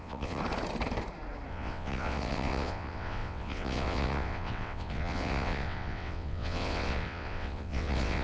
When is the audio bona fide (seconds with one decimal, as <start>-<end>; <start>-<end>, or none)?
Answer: 0.4-1.5